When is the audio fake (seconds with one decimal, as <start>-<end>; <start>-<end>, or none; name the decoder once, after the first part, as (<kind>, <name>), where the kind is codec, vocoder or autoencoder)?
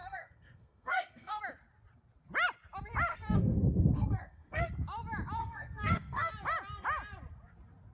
0.0-1.4 (codec, SNAC); 3.1-4.7; 5.4-6.3